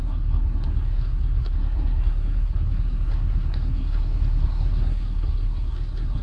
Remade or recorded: remade